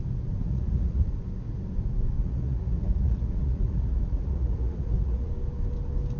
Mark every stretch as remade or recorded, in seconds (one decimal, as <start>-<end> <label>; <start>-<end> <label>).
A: 0.0-0.4 recorded; 0.4-1.1 remade; 1.1-2.2 recorded; 2.2-5.3 remade; 5.3-6.2 recorded